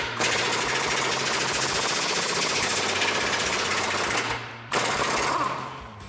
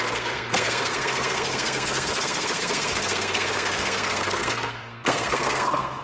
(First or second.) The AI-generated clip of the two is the second